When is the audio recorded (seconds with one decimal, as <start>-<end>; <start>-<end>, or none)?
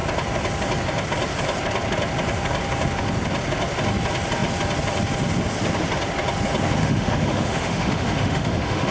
0.0-6.8